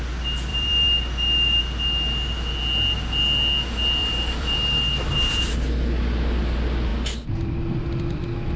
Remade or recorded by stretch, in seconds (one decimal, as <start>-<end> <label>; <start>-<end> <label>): 0.0-0.5 recorded; 0.5-1.6 remade; 1.6-4.0 recorded; 4.0-5.5 remade; 5.5-8.6 recorded